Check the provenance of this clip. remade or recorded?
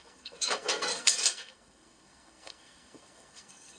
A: remade